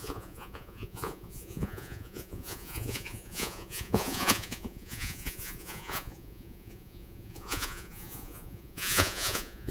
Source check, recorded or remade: remade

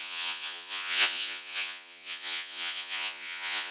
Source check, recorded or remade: remade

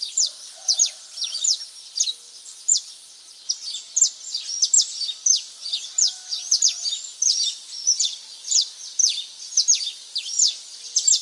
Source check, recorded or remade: recorded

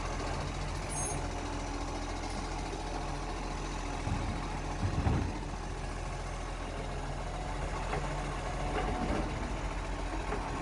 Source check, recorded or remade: recorded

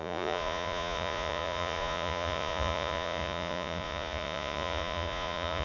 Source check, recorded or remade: remade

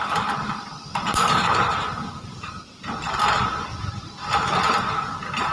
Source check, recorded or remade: recorded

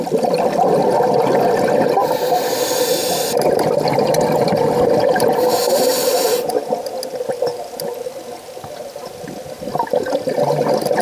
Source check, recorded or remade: recorded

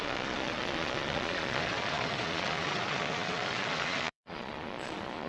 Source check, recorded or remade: remade